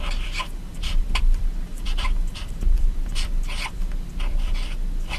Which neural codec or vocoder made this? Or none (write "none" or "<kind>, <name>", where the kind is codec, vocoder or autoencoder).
vocoder, BigVGAN v2